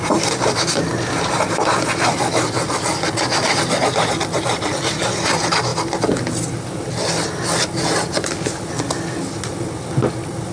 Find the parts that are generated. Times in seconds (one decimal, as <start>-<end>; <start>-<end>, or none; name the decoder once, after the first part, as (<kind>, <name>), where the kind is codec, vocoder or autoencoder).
none